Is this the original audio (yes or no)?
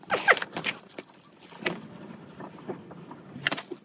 no